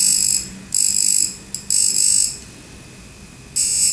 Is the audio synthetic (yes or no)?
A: no